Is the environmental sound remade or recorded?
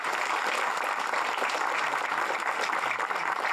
recorded